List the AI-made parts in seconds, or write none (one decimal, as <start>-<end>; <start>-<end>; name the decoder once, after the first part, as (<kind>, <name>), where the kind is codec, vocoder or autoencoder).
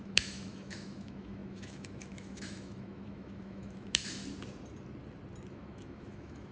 0.0-4.2 (autoencoder, DAC-VAE); 5.5-6.5